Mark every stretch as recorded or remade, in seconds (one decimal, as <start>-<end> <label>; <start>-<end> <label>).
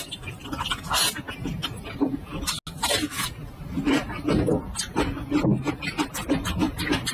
0.0-7.1 recorded